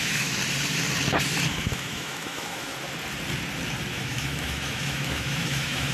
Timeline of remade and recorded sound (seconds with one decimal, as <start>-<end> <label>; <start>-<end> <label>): 0.0-0.4 remade; 0.4-1.5 recorded; 1.5-2.7 remade; 2.7-3.9 recorded; 3.9-5.9 remade